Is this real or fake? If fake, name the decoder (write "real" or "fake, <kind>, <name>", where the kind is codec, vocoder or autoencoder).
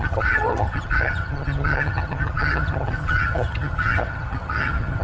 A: fake, vocoder, HiFi-GAN